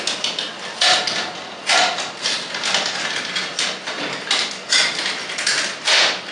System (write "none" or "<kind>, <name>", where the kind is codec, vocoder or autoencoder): none